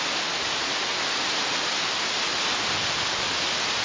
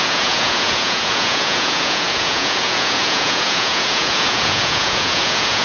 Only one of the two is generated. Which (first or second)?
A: second